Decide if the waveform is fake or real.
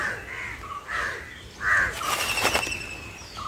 real